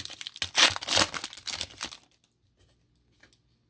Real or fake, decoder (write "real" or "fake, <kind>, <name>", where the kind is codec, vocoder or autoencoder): real